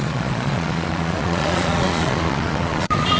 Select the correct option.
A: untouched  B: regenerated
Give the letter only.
B